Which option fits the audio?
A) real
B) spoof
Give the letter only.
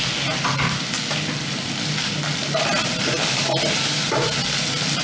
A